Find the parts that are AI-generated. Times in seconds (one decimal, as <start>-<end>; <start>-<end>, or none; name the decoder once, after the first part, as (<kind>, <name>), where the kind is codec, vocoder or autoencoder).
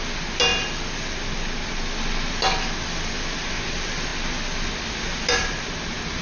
none